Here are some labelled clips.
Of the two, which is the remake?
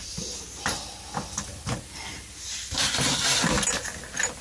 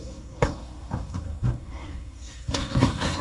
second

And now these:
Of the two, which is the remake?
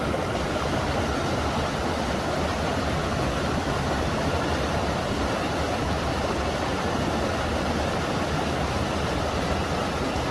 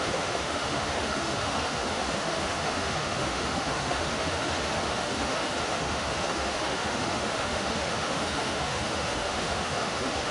second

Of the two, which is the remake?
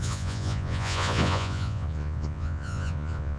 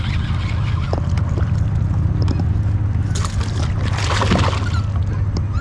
first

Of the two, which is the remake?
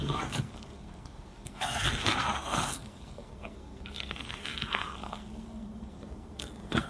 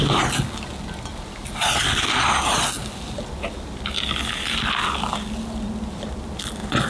first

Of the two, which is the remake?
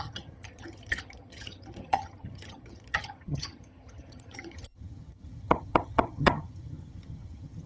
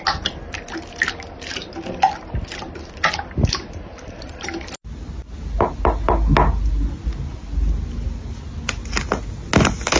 first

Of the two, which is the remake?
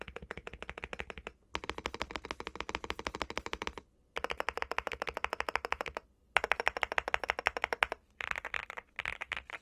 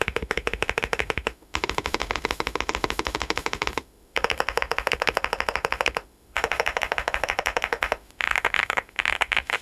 second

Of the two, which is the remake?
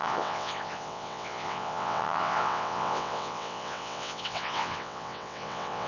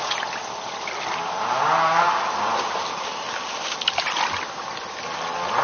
first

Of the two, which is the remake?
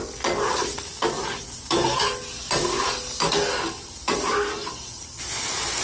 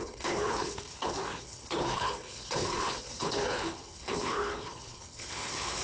second